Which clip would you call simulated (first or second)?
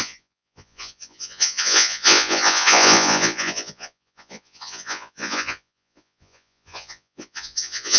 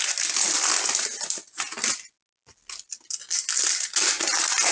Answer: first